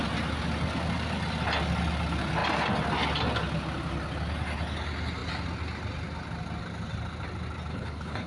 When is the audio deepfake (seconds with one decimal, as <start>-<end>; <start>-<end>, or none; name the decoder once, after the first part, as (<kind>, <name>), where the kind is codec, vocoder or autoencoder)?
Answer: 7.7-8.3 (codec, HILCodec)